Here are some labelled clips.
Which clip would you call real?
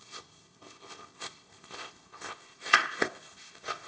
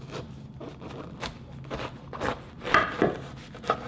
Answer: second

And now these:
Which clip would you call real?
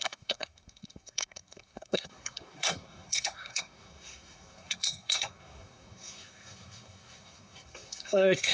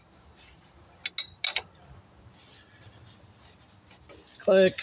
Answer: second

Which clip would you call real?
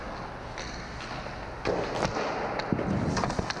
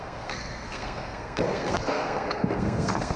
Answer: first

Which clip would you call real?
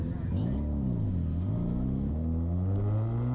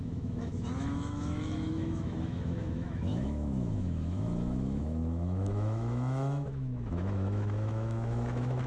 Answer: first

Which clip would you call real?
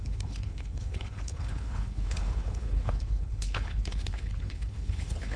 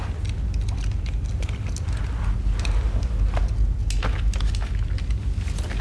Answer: second